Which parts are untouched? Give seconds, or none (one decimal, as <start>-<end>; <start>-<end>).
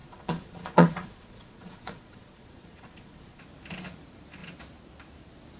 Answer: 3.4-5.6